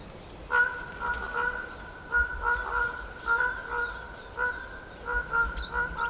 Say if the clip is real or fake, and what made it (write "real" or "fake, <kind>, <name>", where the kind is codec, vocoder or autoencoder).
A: real